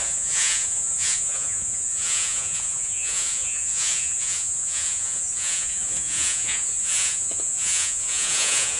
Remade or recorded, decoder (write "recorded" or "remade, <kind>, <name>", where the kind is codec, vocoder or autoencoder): remade, vocoder, Vocos